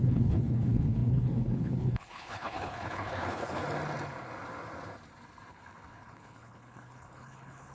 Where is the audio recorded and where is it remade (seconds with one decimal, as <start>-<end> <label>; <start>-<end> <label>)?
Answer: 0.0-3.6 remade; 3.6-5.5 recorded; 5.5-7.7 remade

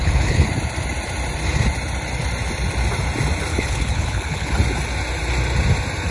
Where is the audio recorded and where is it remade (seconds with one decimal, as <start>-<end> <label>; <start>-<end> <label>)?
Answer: 0.0-0.5 remade; 0.5-3.5 recorded; 3.5-4.5 remade; 4.5-6.1 recorded

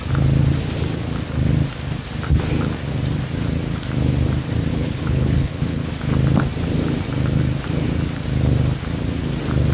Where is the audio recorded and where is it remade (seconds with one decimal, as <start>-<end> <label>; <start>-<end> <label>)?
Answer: 0.0-4.7 recorded; 4.7-5.9 remade; 5.9-9.7 recorded